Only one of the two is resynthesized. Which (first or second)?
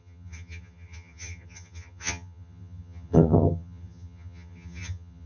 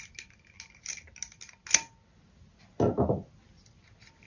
first